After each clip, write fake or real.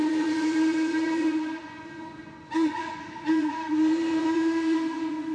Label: fake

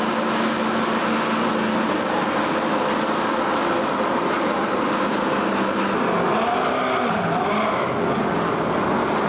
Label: real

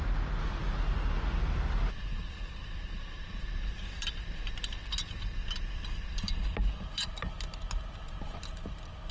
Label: real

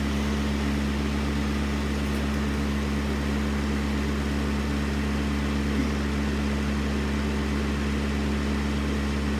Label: real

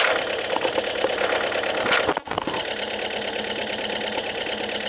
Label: real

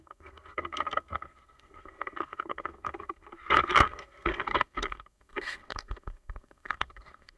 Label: fake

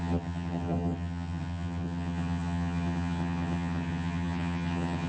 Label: fake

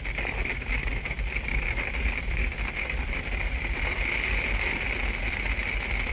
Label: real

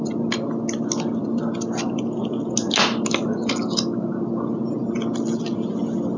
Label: real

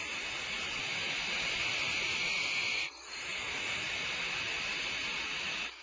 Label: real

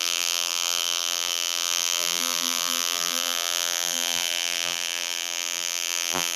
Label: fake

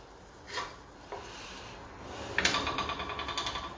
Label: real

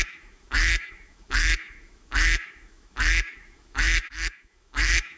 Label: fake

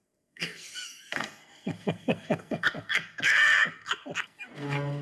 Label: fake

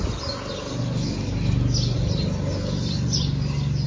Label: real